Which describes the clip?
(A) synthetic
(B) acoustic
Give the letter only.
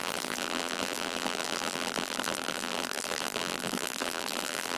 A